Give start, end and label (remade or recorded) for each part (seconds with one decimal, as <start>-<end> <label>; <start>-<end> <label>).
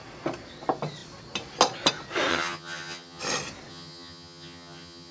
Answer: 0.0-2.3 recorded; 2.3-3.2 remade; 3.2-3.7 recorded; 3.7-5.1 remade